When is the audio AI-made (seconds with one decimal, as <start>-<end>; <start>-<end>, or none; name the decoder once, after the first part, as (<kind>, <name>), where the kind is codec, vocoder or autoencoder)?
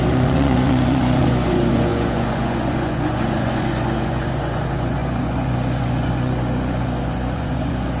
0.0-8.0 (vocoder, Vocos)